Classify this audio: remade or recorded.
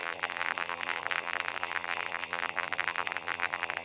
remade